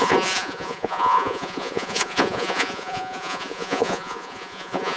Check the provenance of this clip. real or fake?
fake